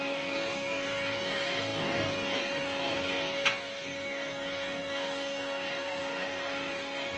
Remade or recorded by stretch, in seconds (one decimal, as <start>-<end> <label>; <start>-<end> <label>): 0.0-7.2 remade

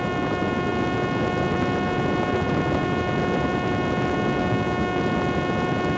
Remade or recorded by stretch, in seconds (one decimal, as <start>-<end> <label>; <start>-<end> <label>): 0.0-4.4 recorded; 4.4-5.0 remade; 5.0-6.0 recorded

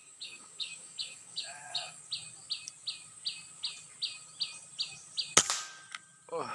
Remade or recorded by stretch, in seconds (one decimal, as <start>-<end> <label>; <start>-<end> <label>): 0.0-2.0 remade; 2.0-6.5 recorded

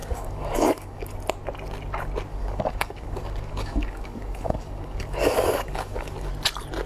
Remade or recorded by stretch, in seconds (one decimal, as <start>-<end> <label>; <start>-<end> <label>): 0.0-1.1 remade; 1.1-2.3 recorded; 2.3-6.3 remade; 6.3-6.9 recorded

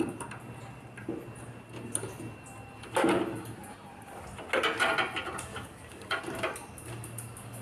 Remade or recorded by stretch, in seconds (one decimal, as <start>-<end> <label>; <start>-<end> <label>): 0.0-5.5 recorded; 5.5-6.2 remade; 6.2-7.6 recorded

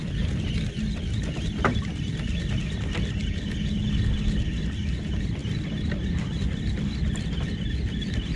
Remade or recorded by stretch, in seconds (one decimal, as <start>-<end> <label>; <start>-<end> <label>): 0.0-8.4 recorded

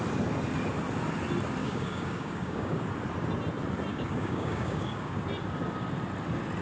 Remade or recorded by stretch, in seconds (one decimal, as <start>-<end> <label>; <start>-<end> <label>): 0.0-1.6 recorded; 1.6-2.9 remade; 2.9-3.9 recorded; 3.9-5.2 remade; 5.2-6.6 recorded